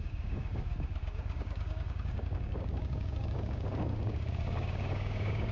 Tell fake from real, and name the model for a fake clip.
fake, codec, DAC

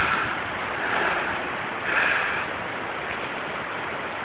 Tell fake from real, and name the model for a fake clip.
fake, vocoder, BigVGAN v2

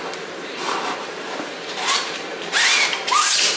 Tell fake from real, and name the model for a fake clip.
real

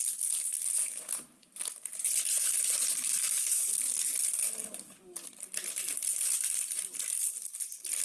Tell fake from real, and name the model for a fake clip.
real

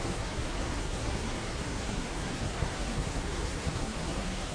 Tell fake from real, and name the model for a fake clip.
fake, codec, SNAC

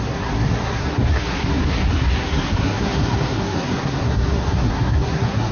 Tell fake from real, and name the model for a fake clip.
fake, codec, SNAC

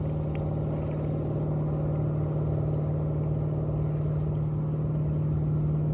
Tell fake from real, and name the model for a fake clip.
real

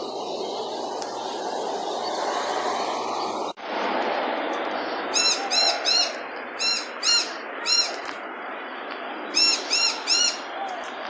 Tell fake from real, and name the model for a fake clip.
real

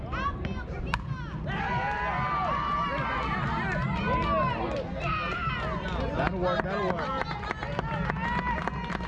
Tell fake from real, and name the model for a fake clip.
real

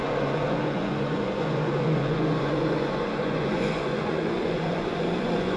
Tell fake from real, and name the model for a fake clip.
fake, vocoder, Vocos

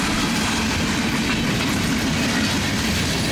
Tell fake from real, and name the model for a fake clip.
real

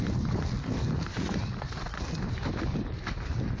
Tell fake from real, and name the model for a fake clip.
real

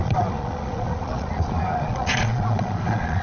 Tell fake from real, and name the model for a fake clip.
fake, vocoder, Vocos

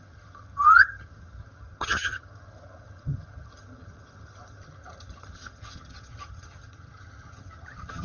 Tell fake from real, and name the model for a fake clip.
fake, vocoder, HiFi-GAN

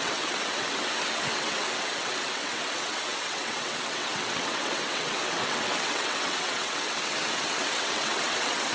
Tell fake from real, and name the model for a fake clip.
fake, vocoder, WaveNeXt